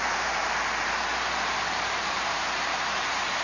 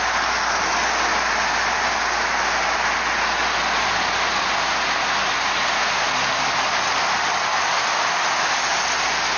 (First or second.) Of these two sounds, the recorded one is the second